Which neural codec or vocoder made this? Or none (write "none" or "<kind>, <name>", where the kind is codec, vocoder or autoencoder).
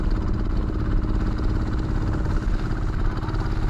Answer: none